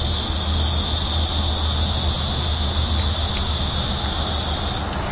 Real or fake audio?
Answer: real